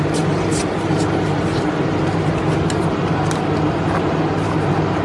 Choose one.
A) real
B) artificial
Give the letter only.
A